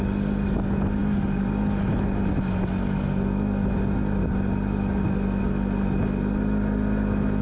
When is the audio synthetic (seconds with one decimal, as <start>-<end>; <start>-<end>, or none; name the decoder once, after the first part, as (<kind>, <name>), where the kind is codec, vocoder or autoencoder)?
none